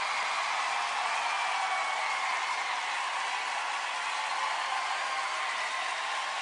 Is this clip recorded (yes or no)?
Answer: yes